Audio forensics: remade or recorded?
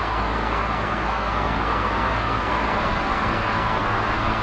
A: remade